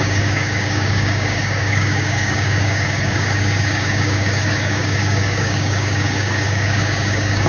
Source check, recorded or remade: remade